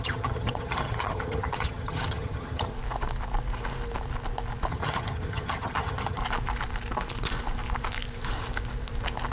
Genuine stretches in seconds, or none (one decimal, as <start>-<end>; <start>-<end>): 2.7-4.7; 6.2-9.3